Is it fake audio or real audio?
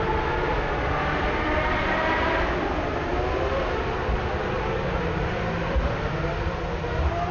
real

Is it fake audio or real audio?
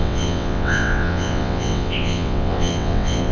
fake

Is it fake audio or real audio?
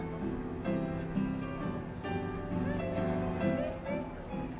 real